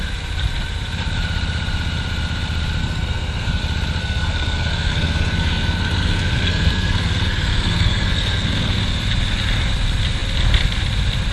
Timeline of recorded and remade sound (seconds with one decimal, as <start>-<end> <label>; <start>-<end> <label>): 0.0-2.8 recorded; 2.8-3.6 remade; 3.6-4.0 recorded; 4.0-8.8 remade; 8.8-11.3 recorded